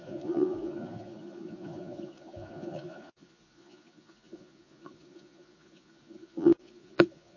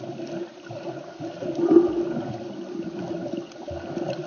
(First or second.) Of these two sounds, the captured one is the second